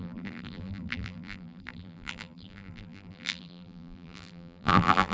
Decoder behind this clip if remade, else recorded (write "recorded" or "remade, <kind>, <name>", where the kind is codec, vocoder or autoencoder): remade, vocoder, BigVGAN v2